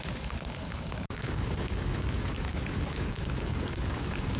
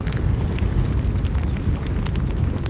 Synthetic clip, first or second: first